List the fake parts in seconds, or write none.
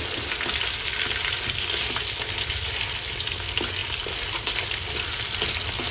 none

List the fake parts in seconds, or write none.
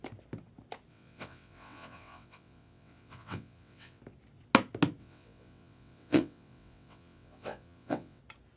0.9-4.0 (vocoder, WaveNeXt); 5.0-8.2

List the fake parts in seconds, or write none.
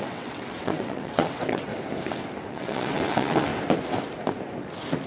0.0-1.7 (vocoder, WaveNeXt); 2.5-3.5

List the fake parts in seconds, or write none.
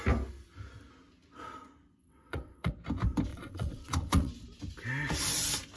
2.0-2.7 (vocoder, WaveNeXt); 3.3-4.3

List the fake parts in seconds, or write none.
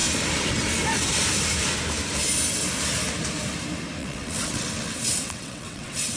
4.0-6.2 (vocoder, WaveNeXt)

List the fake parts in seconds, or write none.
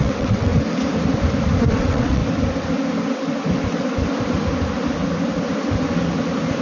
0.0-0.5 (vocoder, WaveNeXt); 1.7-2.2